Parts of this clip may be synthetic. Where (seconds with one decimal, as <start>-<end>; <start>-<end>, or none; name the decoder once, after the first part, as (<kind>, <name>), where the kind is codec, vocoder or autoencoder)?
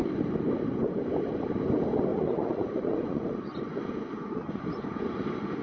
2.1-5.6 (vocoder, Vocos)